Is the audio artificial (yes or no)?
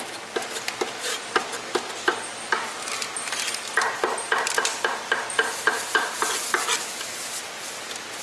no